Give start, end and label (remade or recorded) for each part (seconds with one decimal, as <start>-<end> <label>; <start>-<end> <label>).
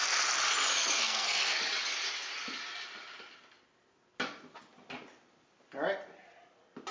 0.0-0.8 recorded; 0.8-1.6 remade; 1.6-6.9 recorded